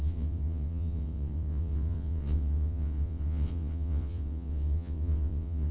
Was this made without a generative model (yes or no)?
no